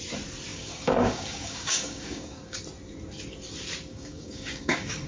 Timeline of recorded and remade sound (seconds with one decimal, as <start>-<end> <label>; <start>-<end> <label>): 0.0-0.5 recorded; 0.5-2.6 remade; 2.6-3.9 recorded; 3.9-5.1 remade